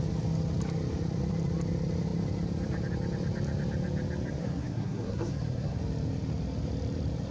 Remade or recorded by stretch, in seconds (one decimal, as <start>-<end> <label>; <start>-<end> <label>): 0.0-4.4 recorded; 4.4-5.8 remade; 5.8-7.3 recorded

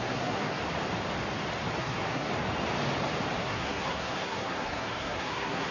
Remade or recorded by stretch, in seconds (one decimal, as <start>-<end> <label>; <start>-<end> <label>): 0.0-0.6 remade; 0.6-1.8 recorded; 1.8-2.3 remade; 2.3-3.4 recorded; 3.4-5.7 remade